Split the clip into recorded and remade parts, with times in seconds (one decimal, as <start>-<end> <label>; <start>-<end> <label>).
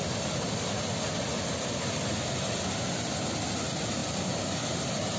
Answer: 0.0-5.2 recorded